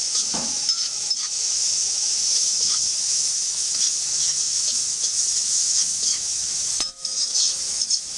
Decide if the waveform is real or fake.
fake